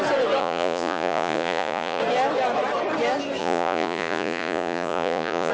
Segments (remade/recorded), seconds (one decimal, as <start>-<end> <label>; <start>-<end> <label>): 0.0-0.4 recorded; 0.4-2.0 remade; 2.0-3.4 recorded; 3.4-5.5 remade